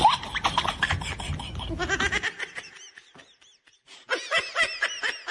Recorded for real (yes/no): yes